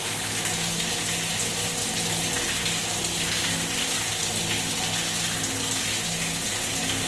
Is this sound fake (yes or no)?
no